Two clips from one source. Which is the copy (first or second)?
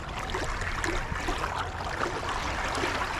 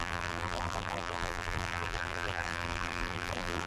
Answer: second